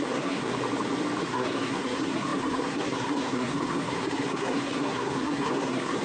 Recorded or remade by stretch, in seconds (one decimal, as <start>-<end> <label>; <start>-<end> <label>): 0.0-0.6 remade; 0.6-1.2 recorded; 1.2-6.0 remade